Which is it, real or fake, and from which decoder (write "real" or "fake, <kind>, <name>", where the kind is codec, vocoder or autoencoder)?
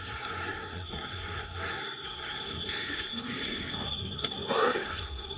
fake, codec, SNAC